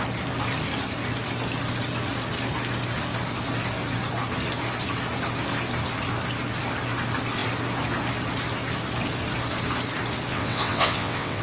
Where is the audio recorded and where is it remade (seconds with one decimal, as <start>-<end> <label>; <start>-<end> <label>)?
0.0-10.3 recorded; 10.3-11.4 remade